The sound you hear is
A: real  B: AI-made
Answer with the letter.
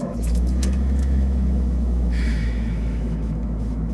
B